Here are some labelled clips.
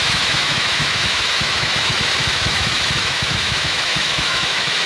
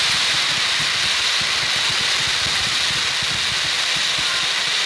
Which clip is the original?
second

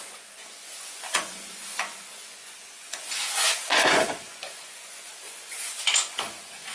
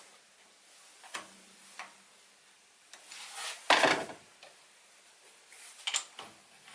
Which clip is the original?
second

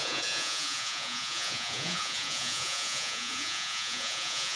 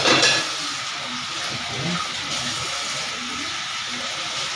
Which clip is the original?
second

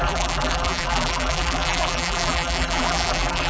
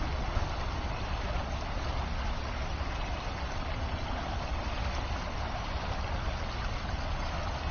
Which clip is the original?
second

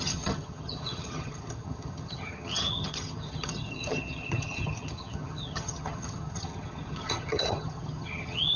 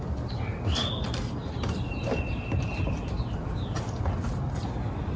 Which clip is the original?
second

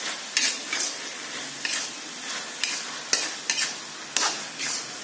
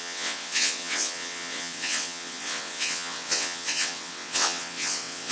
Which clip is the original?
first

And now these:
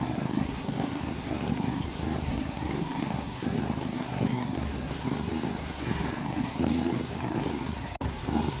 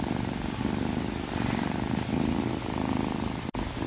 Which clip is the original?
second